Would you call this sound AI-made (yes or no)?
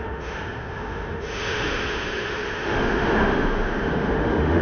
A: yes